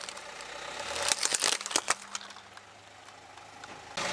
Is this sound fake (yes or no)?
no